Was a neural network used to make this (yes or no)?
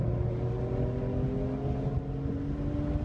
no